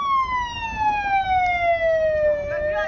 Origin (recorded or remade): recorded